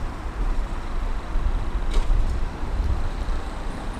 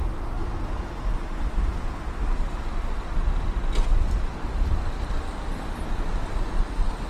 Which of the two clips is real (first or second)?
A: second